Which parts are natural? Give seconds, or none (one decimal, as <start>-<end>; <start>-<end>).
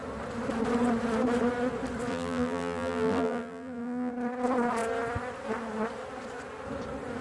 0.0-2.1; 4.1-7.2